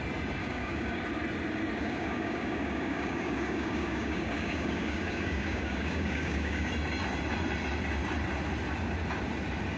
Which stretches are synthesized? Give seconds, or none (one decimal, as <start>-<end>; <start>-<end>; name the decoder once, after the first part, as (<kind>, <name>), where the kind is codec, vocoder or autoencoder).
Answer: 0.4-1.0 (codec, DAC); 1.8-6.7